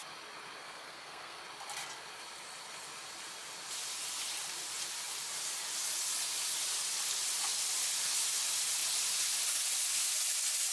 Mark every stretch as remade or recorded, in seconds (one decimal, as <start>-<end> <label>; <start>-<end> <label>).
0.0-0.6 recorded; 0.6-1.4 remade; 1.4-10.7 recorded